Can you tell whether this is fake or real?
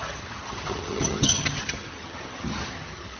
fake